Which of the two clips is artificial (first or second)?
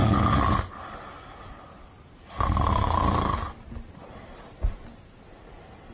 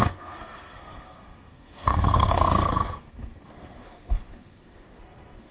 second